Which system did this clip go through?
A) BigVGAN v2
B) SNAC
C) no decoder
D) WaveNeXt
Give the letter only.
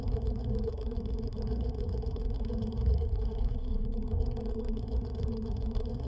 B